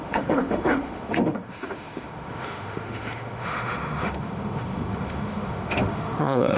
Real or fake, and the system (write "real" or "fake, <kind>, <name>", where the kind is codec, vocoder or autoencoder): fake, autoencoder, DAC-VAE